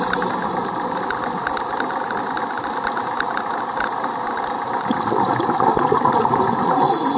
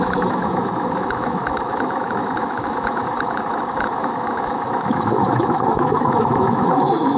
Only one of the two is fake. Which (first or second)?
second